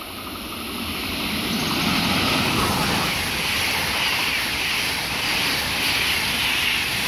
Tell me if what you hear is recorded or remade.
remade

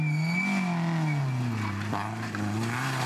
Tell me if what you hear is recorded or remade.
recorded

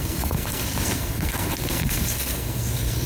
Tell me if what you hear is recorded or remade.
remade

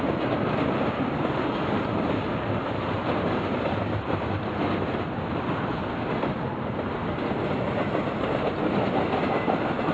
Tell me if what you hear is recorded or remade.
recorded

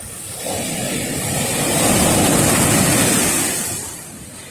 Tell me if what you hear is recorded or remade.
recorded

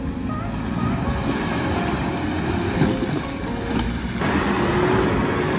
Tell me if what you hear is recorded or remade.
recorded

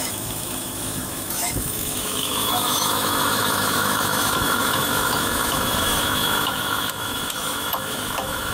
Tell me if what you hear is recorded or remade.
remade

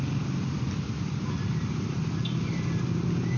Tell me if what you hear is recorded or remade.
recorded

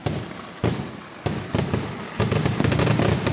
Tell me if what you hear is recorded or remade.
recorded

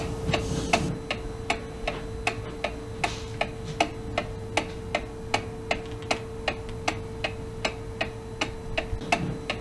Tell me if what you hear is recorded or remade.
recorded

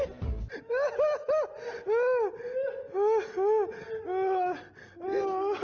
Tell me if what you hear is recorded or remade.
recorded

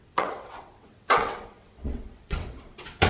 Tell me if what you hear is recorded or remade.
remade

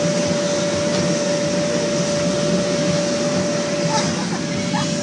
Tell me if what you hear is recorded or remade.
recorded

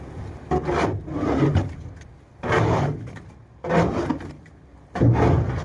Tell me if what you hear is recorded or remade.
recorded